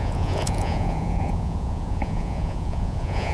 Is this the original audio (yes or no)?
no